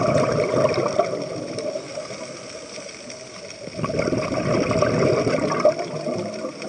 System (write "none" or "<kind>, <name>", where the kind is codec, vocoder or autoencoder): none